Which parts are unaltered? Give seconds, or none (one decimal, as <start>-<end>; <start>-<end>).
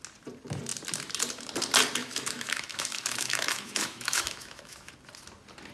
0.0-2.0; 4.9-5.7